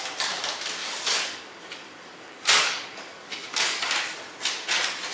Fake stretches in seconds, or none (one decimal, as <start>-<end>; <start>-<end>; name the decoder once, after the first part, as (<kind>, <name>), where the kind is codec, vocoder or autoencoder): 0.8-3.9 (codec, DAC)